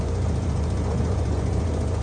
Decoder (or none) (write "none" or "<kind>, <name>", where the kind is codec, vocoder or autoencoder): vocoder, Vocos